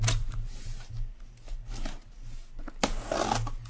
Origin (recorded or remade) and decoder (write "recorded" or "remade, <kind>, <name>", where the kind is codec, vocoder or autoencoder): recorded